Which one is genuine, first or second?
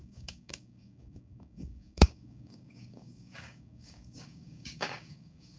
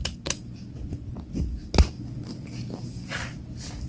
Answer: second